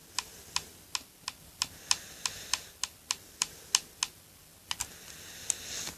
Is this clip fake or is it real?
real